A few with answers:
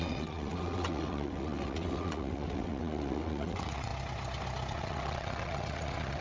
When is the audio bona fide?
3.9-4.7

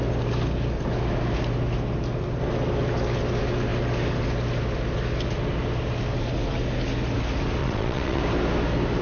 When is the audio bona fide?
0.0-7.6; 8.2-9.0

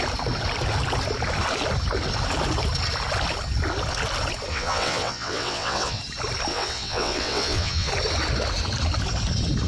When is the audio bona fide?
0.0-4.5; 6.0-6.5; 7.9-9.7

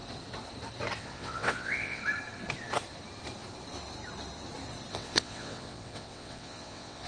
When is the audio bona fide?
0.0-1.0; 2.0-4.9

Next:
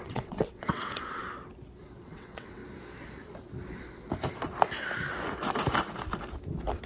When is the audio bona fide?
1.2-2.0; 2.6-6.9

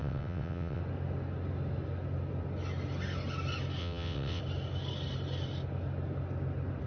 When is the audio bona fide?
0.8-3.8; 4.4-6.9

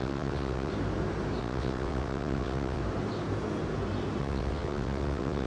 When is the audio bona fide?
0.7-1.4; 2.8-4.2